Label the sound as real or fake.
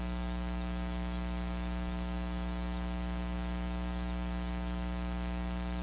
real